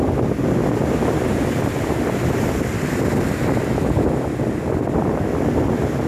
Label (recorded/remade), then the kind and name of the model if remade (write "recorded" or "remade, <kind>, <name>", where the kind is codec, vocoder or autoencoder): recorded